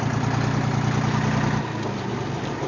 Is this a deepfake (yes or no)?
no